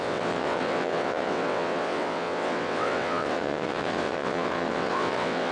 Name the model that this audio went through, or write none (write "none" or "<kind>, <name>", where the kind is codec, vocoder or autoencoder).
vocoder, WaveNeXt